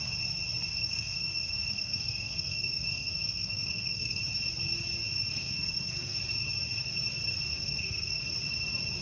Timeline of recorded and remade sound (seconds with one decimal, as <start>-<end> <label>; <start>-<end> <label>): 0.0-0.8 recorded; 0.8-4.2 remade; 4.2-5.2 recorded; 5.2-6.2 remade; 6.2-7.5 recorded; 7.5-8.2 remade; 8.2-9.0 recorded